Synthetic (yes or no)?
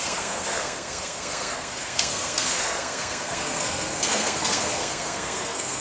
yes